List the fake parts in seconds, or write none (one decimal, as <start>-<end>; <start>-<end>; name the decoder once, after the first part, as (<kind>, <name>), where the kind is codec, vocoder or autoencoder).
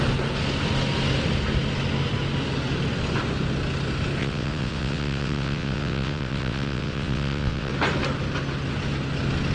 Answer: 4.2-7.7 (vocoder, WaveNeXt)